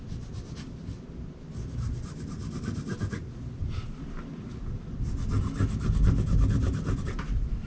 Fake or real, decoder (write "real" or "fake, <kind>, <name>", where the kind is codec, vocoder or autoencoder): real